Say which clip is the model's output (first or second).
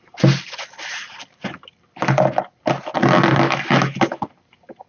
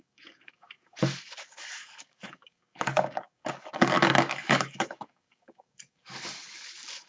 second